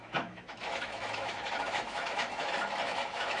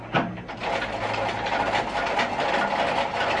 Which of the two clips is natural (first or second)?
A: second